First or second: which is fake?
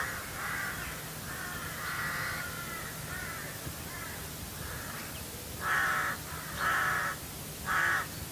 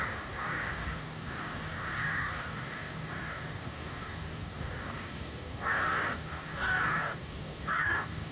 second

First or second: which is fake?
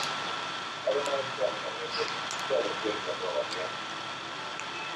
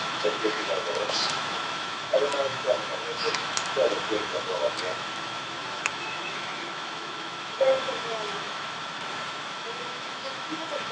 second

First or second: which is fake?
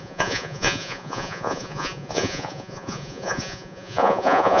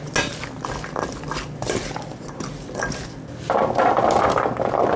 first